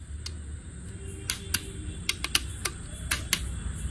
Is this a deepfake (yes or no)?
no